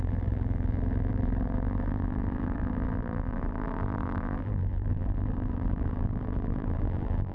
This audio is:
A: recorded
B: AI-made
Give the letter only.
B